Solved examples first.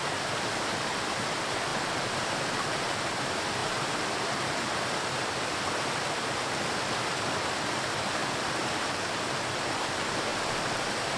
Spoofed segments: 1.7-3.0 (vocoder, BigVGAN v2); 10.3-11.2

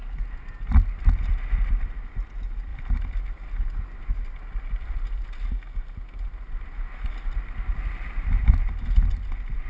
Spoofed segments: none

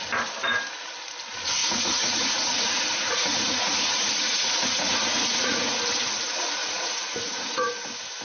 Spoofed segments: 1.6-5.8 (vocoder, Vocos); 6.6-7.7